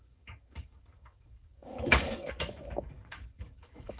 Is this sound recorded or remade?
remade